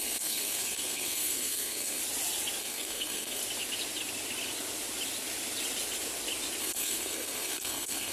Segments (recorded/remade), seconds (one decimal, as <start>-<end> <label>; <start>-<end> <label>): 0.0-2.0 remade; 2.0-2.6 recorded; 2.6-3.4 remade; 3.4-6.6 recorded; 6.6-8.1 remade